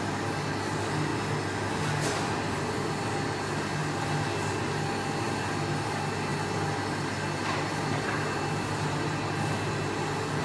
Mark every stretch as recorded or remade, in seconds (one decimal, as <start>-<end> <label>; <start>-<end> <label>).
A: 0.0-10.4 recorded